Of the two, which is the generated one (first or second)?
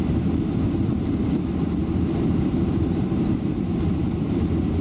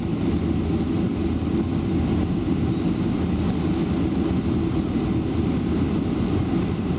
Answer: first